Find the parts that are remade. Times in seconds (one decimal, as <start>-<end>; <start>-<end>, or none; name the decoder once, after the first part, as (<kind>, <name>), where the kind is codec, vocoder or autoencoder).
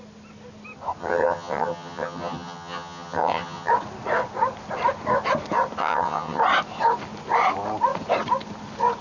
1.0-3.7 (vocoder, HiFi-GAN); 5.8-6.4